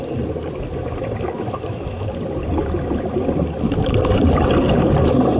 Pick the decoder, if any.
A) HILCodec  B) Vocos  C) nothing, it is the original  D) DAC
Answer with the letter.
C